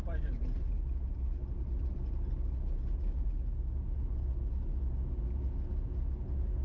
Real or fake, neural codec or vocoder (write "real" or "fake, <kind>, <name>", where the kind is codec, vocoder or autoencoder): real